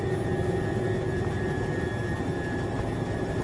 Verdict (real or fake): real